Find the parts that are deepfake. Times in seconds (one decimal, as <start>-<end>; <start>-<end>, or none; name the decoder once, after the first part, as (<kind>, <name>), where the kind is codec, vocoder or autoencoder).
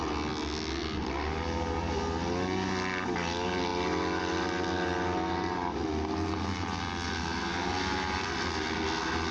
none